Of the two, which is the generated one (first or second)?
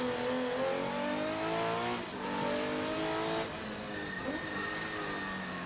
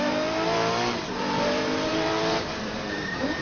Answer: second